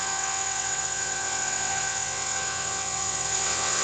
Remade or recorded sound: remade